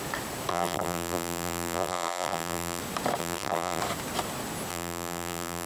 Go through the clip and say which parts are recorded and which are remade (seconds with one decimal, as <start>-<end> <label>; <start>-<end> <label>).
0.0-0.5 recorded; 0.5-2.8 remade; 2.8-3.2 recorded; 3.2-3.8 remade; 3.8-4.7 recorded; 4.7-5.7 remade